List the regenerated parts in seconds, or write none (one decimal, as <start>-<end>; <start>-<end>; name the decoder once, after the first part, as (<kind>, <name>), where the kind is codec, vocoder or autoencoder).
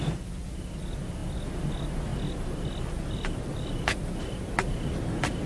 none